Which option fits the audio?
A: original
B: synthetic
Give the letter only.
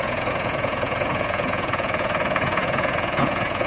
B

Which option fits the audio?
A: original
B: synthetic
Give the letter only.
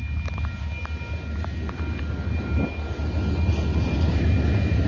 A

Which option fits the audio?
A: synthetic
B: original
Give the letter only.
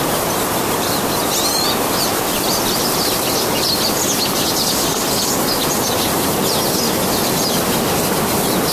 B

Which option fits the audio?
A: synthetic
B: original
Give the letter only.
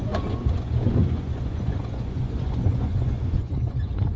A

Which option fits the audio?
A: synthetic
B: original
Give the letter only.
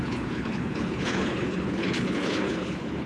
A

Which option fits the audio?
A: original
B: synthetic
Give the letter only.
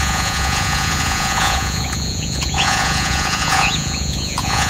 B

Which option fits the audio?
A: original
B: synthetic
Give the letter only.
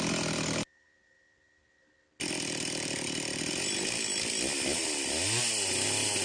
A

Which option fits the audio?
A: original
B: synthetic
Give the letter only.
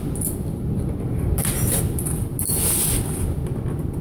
A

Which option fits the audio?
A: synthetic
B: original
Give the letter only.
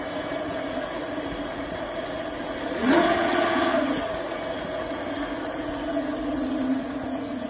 A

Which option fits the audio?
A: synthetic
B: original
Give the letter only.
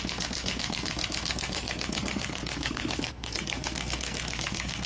A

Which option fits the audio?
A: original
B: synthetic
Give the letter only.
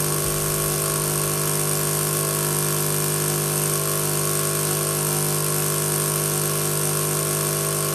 A